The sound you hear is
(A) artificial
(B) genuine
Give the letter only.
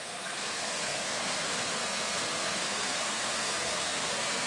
A